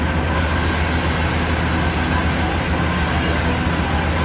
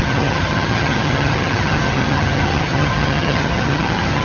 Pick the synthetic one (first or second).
second